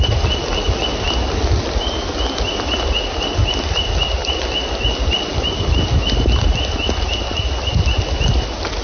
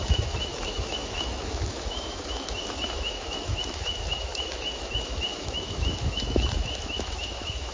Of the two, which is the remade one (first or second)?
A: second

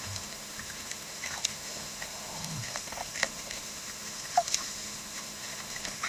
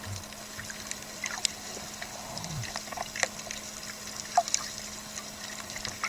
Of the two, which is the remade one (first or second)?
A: first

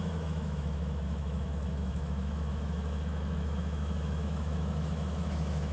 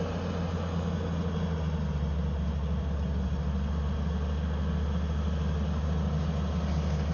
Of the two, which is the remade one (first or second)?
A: first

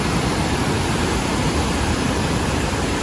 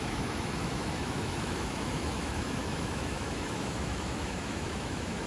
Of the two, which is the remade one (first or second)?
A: second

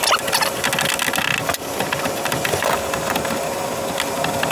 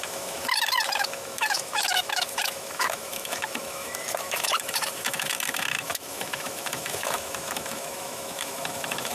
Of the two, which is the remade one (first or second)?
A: second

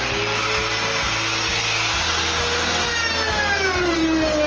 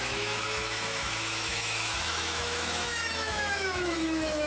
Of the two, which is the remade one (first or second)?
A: second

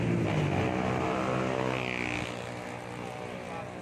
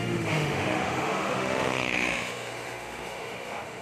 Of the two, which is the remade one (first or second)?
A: second